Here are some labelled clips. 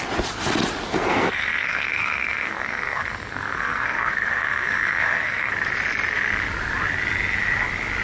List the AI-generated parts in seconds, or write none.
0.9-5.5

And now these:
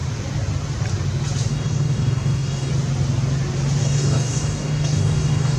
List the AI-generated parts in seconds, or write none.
1.5-2.7; 3.8-5.6

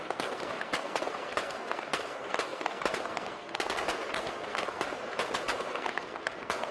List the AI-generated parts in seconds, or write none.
0.0-6.7